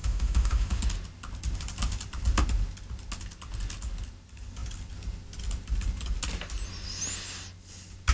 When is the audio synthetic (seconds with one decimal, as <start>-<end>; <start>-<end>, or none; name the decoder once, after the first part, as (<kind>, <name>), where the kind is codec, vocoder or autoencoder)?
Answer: 0.0-0.8 (autoencoder, DAC-VAE)